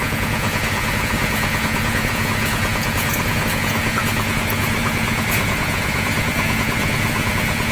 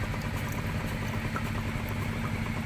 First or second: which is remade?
first